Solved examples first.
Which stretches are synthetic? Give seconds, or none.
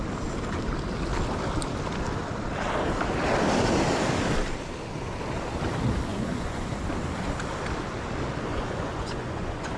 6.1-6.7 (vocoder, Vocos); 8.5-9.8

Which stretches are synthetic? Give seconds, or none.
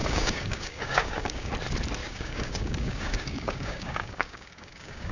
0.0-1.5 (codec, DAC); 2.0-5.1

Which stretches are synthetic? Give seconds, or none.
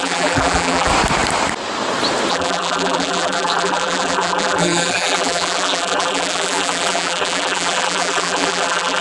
0.0-0.9 (vocoder, BigVGAN v2); 2.3-9.0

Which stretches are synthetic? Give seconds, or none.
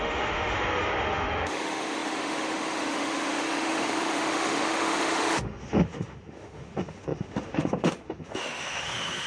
0.0-9.3 (autoencoder, DAC-VAE)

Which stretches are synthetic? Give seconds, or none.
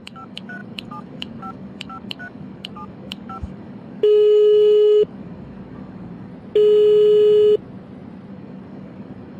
0.0-6.3 (codec, DAC); 8.3-9.4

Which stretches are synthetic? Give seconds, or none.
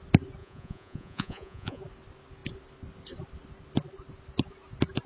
0.4-1.8 (vocoder, Vocos)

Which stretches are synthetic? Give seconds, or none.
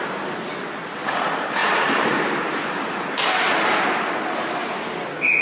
none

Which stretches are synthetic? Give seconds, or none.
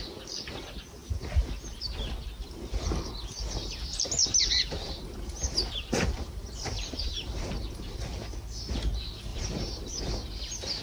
4.2-7.5 (vocoder, BigVGAN v2); 9.3-10.0